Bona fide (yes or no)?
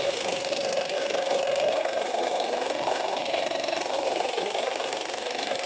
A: no